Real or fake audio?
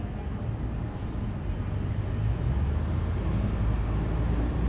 real